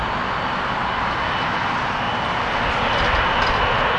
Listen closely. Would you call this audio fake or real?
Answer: real